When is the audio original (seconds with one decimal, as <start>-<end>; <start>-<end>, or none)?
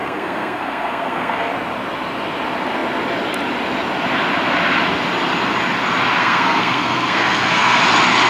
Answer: 1.5-6.2; 7.8-8.3